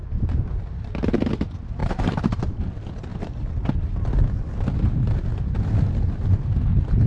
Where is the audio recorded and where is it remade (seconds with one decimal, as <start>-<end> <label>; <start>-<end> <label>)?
0.0-1.8 recorded; 1.8-2.6 remade; 2.6-7.1 recorded